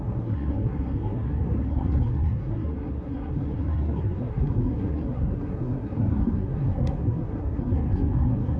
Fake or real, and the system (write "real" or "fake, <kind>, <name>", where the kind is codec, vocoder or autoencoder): fake, codec, SNAC